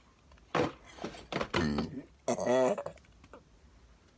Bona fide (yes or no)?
yes